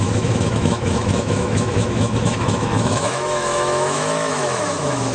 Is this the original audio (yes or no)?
no